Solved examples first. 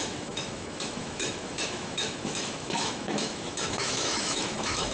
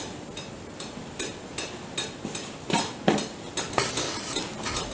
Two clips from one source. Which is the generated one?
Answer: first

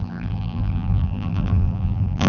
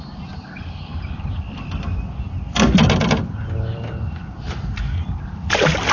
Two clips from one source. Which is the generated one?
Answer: first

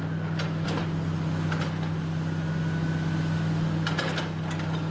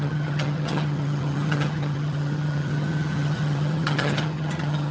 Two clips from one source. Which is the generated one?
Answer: second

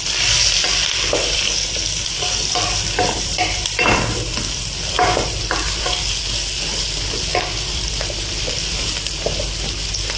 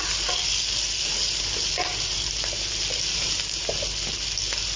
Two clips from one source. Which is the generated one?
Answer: first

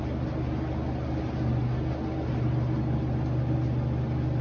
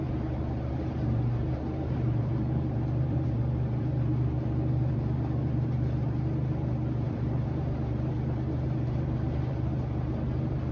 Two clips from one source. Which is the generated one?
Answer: second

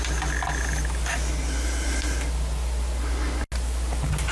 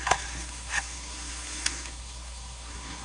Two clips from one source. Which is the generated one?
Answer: second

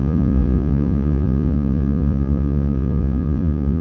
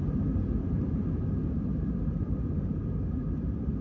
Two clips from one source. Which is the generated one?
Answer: first